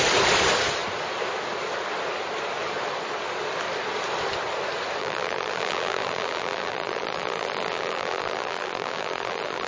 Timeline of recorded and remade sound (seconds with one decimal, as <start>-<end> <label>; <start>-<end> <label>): 0.0-5.0 recorded; 5.0-9.7 remade